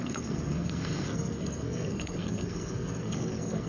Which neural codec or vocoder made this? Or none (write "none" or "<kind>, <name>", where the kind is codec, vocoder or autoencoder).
codec, SNAC